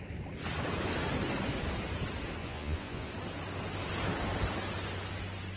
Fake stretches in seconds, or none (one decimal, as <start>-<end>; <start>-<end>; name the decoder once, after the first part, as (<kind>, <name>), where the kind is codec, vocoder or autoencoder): 2.4-3.1 (vocoder, Vocos)